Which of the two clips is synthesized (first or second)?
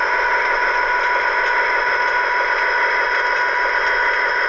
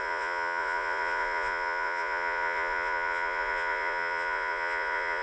second